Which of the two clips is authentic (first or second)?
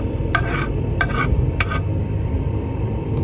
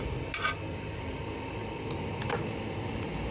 second